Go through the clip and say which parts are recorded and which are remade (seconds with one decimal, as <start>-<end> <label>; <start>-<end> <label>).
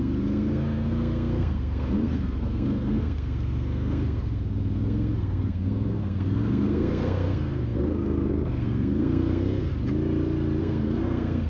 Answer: 0.0-9.7 remade; 9.7-10.6 recorded; 10.6-11.5 remade